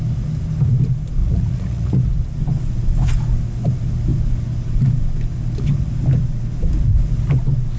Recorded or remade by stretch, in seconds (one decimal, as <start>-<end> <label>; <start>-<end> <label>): 0.0-1.2 recorded; 1.2-2.1 remade; 2.1-7.8 recorded